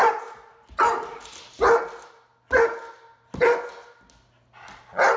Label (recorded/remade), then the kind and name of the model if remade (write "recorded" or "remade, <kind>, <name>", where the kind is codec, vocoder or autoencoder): recorded